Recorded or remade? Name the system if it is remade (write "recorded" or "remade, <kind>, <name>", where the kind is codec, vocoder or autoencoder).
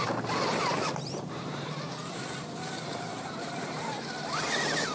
remade, vocoder, BigVGAN v2